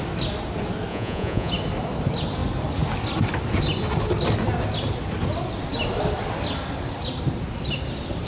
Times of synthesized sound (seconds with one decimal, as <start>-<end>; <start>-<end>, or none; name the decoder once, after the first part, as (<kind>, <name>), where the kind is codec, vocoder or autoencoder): 0.9-1.5 (vocoder, Vocos)